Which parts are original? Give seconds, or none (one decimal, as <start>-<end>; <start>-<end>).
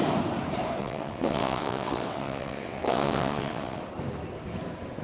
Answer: 0.0-0.8; 3.8-5.0